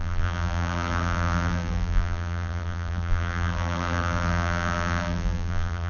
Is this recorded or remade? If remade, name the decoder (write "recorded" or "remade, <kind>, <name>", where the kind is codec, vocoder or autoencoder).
remade, vocoder, BigVGAN v2